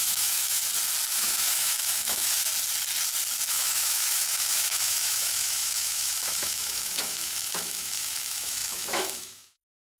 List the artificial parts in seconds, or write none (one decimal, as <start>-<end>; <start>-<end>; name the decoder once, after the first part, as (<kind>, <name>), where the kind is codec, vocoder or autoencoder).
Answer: 0.0-0.6 (autoencoder, DAC-VAE); 1.1-2.5; 3.5-10.0